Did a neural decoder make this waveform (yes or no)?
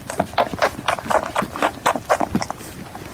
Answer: no